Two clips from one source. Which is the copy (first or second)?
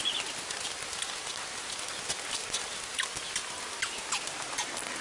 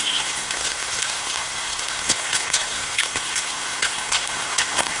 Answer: second